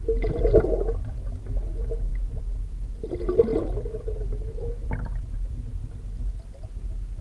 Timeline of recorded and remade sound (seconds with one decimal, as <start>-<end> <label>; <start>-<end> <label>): 0.0-7.2 recorded